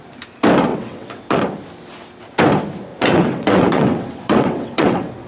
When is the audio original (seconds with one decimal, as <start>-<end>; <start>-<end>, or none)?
0.0-0.7; 1.4-2.9